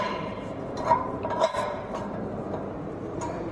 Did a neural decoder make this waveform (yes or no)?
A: yes